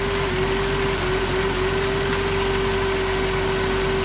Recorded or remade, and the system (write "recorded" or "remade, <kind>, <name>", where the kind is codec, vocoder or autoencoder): recorded